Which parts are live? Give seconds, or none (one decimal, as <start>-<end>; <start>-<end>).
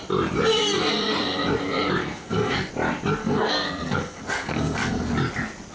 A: 0.0-2.0; 2.7-3.2; 5.1-5.7